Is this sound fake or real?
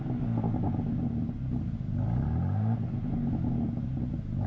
real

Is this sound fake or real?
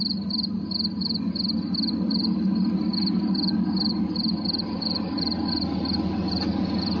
real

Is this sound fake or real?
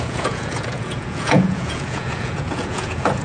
fake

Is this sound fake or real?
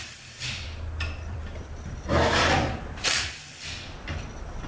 fake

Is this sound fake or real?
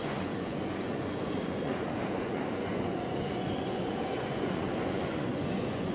fake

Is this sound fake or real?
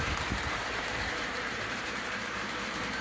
fake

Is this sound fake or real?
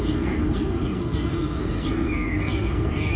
fake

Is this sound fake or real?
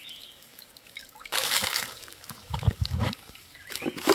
fake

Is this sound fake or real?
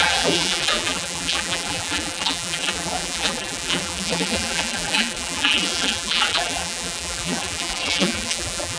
fake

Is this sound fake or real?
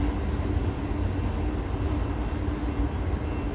real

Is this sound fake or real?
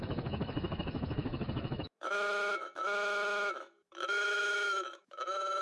fake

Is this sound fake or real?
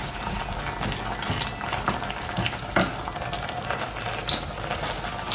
real